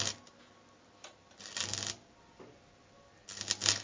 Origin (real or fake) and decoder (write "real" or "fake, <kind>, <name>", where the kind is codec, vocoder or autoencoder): real